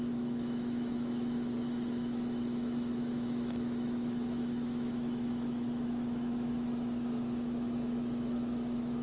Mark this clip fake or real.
fake